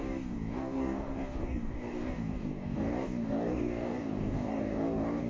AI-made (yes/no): yes